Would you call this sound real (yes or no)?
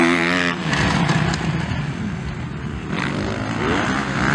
yes